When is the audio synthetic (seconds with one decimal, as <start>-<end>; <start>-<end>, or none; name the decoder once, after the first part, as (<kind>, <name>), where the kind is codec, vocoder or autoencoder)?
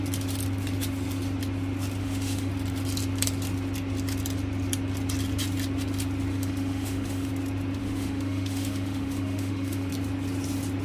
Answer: 2.0-2.5 (autoencoder, DAC-VAE); 6.3-7.3; 7.8-9.9